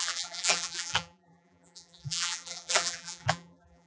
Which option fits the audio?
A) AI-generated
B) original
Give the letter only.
A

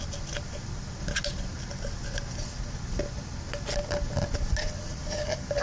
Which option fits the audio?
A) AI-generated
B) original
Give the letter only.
B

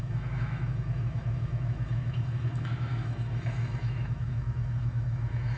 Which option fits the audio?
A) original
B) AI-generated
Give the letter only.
B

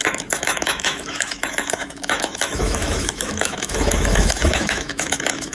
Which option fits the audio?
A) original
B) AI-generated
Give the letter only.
B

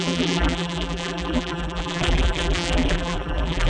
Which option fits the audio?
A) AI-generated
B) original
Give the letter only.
A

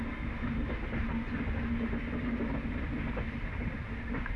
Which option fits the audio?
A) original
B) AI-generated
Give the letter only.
A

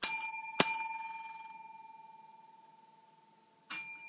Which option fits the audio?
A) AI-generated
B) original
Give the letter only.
B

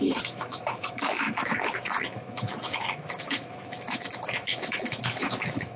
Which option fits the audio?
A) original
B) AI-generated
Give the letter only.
B